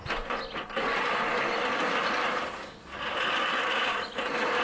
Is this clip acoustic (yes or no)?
yes